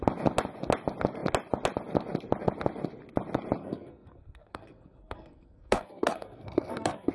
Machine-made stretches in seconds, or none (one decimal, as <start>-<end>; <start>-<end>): 3.6-7.1